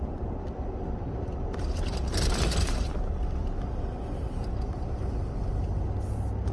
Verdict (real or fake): real